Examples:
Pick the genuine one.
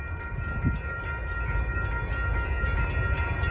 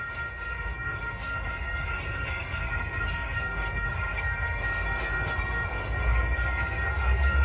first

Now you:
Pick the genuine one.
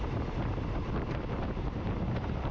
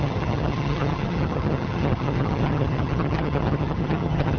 first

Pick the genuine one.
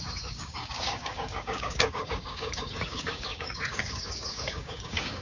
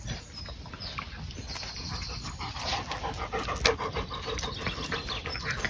second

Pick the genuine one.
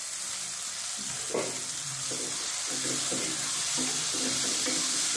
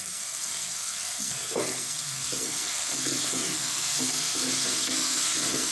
first